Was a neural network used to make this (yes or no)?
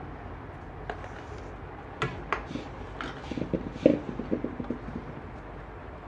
no